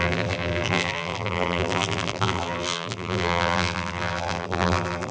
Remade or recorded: remade